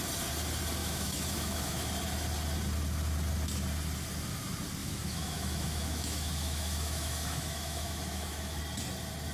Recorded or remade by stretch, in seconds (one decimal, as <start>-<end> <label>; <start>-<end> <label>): 0.0-0.8 recorded; 0.8-1.9 remade; 1.9-4.8 recorded; 4.8-8.6 remade; 8.6-9.3 recorded